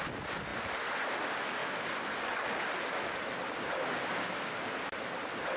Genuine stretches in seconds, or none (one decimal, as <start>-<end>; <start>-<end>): 0.0-5.6